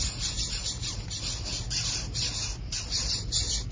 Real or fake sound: real